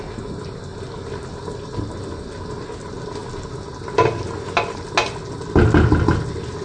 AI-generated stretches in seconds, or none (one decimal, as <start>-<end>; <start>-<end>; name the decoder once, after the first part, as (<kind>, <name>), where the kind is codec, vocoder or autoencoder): none